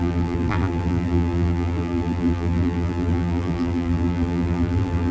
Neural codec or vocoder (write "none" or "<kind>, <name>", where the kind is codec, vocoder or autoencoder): vocoder, BigVGAN v2